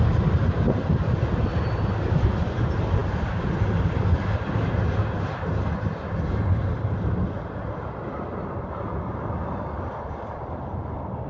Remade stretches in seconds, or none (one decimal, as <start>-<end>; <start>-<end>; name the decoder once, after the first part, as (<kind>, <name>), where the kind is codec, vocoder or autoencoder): none